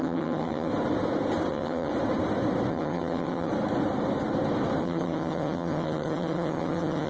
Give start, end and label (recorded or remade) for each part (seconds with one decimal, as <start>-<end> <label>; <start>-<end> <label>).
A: 0.0-0.7 remade; 0.7-1.5 recorded; 1.5-1.9 remade; 1.9-2.7 recorded; 2.7-3.5 remade; 3.5-4.8 recorded; 4.8-7.1 remade